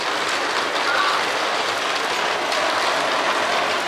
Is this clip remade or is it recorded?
remade